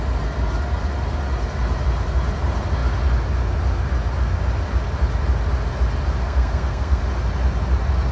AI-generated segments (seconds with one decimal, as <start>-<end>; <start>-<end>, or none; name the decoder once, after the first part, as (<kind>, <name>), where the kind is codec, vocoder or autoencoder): 6.2-7.0 (codec, SNAC)